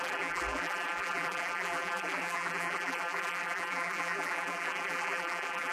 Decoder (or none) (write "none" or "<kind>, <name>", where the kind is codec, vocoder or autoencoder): vocoder, BigVGAN v2